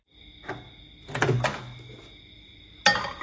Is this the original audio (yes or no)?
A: yes